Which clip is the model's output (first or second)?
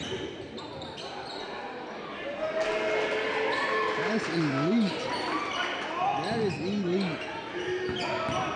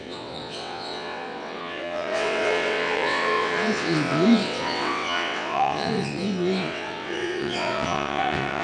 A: second